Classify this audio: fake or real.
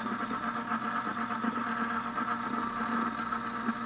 real